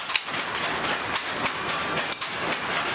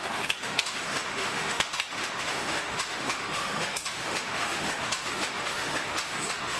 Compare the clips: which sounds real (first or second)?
first